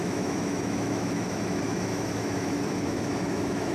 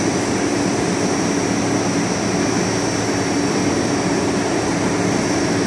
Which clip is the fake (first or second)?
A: first